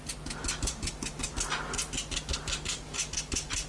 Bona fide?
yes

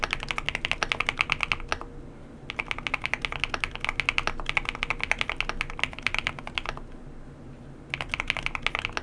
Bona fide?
yes